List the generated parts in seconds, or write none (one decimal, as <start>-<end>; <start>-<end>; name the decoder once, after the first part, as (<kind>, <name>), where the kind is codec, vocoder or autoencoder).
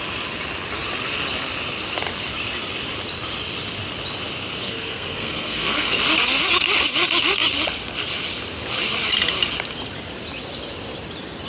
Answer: 4.6-6.0 (codec, SNAC)